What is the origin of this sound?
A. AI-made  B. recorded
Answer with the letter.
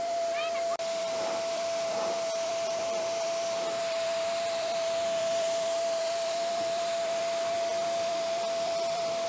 A